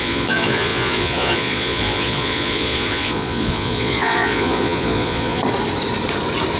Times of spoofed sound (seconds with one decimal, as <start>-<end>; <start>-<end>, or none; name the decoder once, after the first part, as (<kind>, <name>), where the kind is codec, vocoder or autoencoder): 0.0-5.4 (vocoder, Vocos)

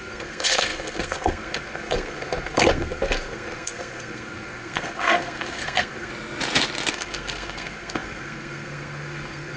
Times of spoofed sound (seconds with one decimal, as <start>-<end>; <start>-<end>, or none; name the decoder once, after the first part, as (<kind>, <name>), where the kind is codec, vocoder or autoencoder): 0.0-6.1 (codec, SNAC); 6.9-9.6

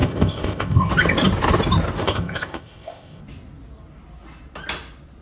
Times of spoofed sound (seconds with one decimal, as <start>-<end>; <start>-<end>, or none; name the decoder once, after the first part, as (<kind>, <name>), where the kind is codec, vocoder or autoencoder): 0.0-0.9 (codec, ZipCodec); 2.0-3.2

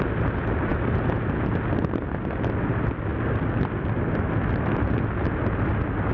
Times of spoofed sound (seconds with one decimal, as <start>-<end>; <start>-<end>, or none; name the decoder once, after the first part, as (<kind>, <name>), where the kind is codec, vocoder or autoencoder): none

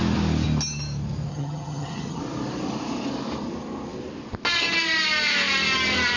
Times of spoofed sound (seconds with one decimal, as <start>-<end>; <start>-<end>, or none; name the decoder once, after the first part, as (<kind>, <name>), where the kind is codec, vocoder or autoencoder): 1.3-2.2 (vocoder, HiFi-GAN)

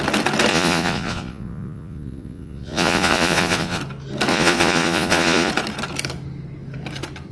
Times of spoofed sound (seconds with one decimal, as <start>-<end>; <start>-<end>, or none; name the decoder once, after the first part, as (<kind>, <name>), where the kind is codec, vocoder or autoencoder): 0.5-3.8 (vocoder, Vocos); 4.3-5.5

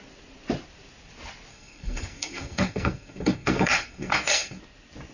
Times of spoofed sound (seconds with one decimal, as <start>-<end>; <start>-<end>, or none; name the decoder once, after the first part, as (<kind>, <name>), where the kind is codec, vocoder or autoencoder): 1.5-4.6 (codec, SNAC)

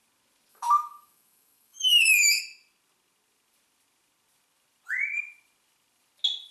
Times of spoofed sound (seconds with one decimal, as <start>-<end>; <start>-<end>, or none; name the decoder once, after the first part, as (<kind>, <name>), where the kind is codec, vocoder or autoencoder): 0.5-2.4 (autoencoder, DAC-VAE)